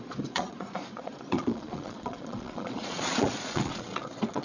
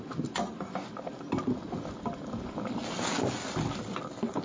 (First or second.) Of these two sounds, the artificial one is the first